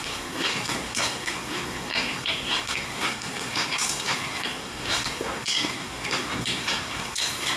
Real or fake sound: fake